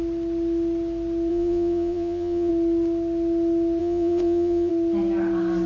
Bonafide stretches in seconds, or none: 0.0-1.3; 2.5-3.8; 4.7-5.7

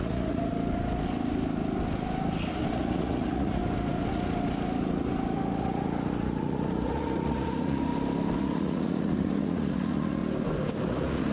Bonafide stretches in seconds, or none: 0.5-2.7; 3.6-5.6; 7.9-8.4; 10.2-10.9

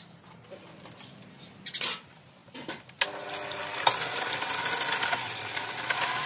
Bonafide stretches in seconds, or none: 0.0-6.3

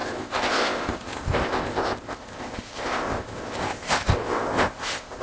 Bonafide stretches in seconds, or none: none

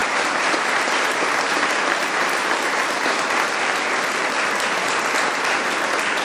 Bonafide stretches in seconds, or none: 2.8-6.2

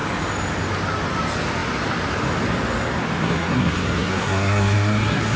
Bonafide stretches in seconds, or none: 0.0-3.2

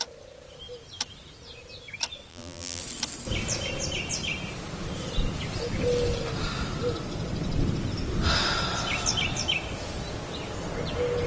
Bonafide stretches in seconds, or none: 0.0-2.3; 2.8-11.3